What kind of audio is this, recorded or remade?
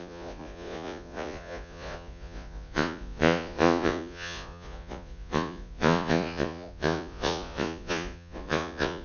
remade